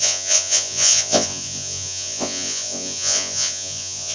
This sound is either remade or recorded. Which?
remade